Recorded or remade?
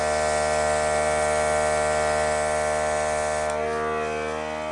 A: recorded